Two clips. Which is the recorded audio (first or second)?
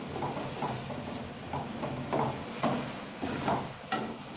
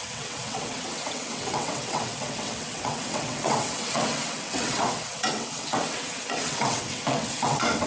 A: first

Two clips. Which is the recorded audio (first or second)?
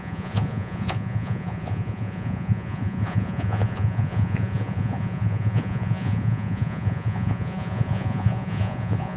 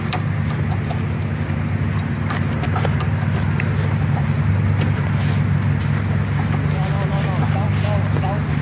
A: second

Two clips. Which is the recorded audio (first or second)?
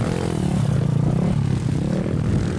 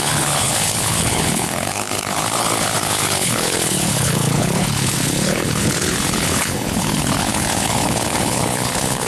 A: first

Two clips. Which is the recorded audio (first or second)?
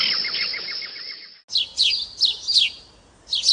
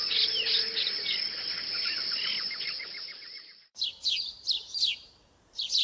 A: first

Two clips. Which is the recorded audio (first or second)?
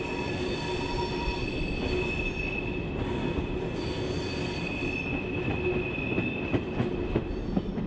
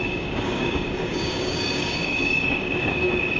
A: first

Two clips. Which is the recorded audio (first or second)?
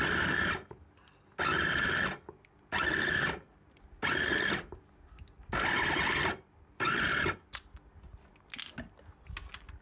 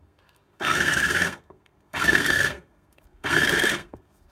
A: first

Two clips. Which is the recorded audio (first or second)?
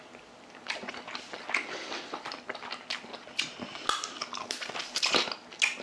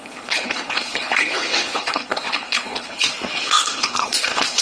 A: first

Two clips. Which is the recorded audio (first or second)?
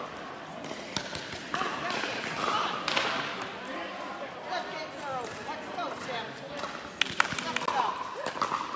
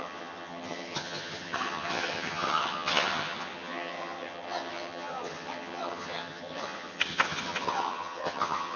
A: first